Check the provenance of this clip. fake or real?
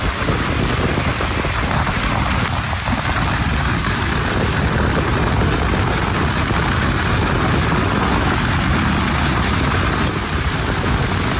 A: real